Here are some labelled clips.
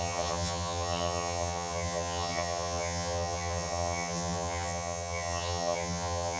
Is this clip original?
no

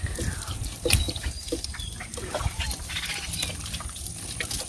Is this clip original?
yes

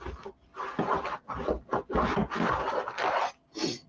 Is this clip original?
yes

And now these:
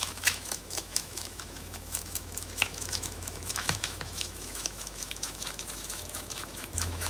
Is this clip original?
no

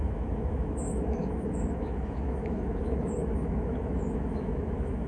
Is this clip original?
no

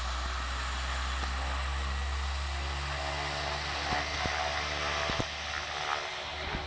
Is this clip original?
yes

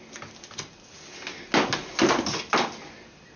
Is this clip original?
yes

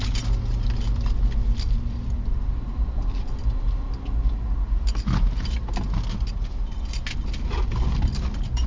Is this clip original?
yes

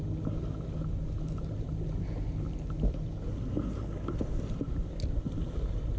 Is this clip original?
yes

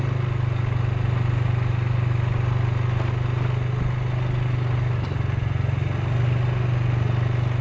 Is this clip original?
yes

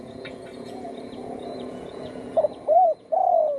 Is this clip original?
no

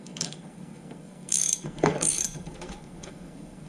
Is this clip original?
no